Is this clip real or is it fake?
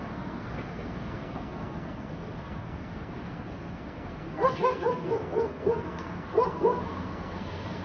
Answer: fake